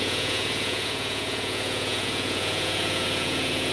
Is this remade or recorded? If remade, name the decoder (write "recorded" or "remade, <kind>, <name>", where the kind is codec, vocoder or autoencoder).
remade, vocoder, Vocos